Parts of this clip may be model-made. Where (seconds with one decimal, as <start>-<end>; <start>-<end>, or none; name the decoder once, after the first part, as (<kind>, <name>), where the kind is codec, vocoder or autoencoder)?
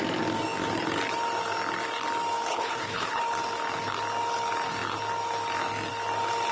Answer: 2.5-3.2 (codec, HILCodec)